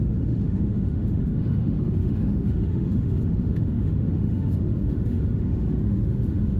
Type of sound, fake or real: fake